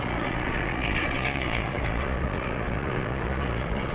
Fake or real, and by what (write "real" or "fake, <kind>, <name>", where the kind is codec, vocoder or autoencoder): fake, vocoder, Vocos